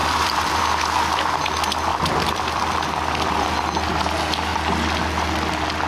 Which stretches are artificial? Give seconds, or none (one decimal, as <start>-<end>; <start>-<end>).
0.0-0.6; 1.9-3.9